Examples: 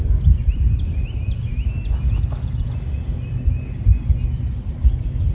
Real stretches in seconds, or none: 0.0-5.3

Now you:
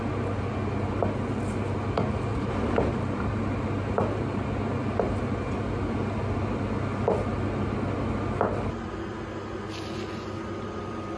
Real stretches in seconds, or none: 0.0-2.3; 4.5-11.2

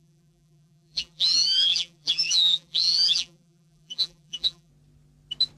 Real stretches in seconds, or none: 4.7-5.6

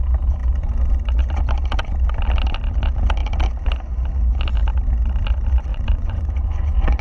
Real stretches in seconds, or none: 0.0-5.7

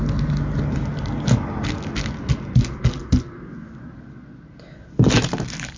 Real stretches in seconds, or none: 0.0-5.8

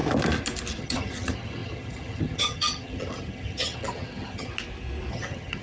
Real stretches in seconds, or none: 0.0-0.8; 4.5-5.1

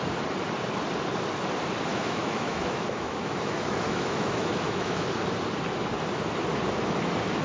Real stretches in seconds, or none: 0.0-1.9; 5.1-7.4

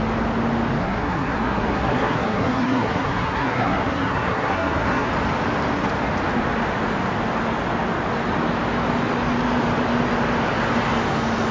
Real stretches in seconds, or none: 0.0-0.8; 5.1-11.5